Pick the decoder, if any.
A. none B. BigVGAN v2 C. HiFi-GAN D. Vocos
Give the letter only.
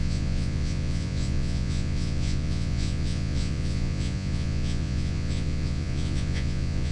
D